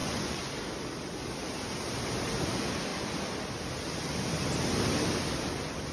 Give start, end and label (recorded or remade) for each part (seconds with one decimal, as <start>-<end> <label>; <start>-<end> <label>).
0.0-0.5 remade; 0.5-5.9 recorded

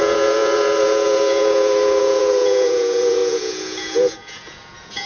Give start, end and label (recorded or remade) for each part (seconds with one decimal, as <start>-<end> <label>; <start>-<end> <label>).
0.0-5.1 remade

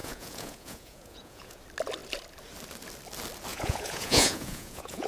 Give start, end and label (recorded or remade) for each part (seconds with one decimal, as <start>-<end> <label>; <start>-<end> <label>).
0.0-1.6 remade; 1.6-3.5 recorded; 3.5-5.1 remade

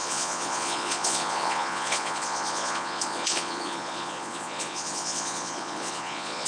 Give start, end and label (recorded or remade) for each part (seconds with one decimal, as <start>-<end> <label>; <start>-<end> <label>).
0.0-6.5 remade

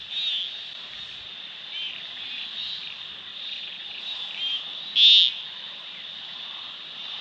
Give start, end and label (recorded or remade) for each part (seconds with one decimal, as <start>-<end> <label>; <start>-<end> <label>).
0.0-3.3 recorded; 3.3-4.0 remade; 4.0-7.2 recorded

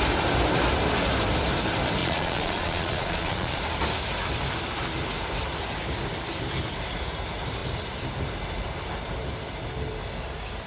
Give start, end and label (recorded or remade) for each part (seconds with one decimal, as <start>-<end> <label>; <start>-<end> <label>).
0.0-2.0 recorded; 2.0-3.6 remade; 3.6-10.7 recorded

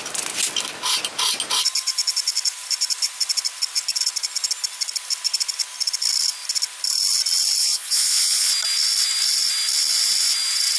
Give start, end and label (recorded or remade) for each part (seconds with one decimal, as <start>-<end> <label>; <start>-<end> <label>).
0.0-7.6 recorded; 7.6-8.5 remade; 8.5-10.8 recorded